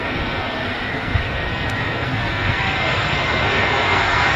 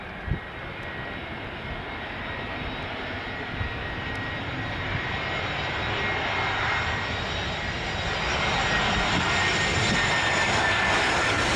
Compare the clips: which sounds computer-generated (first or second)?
first